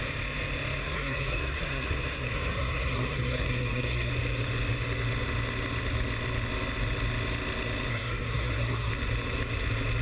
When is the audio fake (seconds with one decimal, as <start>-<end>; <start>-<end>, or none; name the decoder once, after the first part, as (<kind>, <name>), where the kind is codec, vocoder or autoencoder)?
0.8-4.1 (codec, SNAC); 7.9-8.9